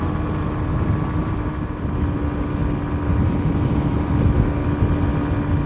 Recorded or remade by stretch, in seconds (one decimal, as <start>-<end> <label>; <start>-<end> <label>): 0.0-1.2 recorded; 1.2-1.8 remade; 1.8-3.1 recorded; 3.1-4.1 remade; 4.1-5.7 recorded